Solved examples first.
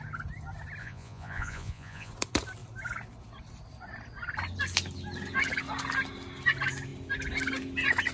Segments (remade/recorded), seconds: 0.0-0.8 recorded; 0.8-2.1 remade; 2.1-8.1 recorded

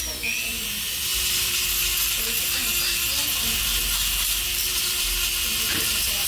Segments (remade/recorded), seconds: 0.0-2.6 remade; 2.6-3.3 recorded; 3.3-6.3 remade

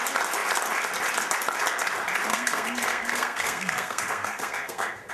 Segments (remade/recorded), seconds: 0.0-2.3 recorded; 2.3-5.1 remade